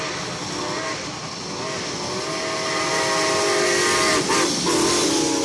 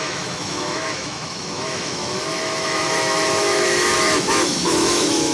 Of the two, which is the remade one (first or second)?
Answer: second